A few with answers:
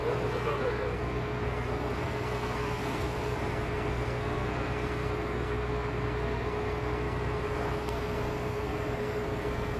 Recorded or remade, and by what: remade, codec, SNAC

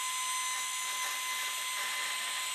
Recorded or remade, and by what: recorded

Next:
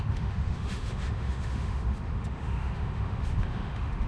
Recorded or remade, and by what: remade, autoencoder, DAC-VAE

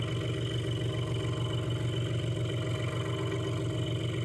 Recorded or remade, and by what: recorded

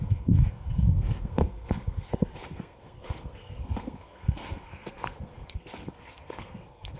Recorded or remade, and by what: remade, codec, SNAC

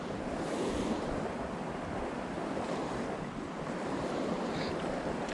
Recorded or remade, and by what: remade, vocoder, BigVGAN v2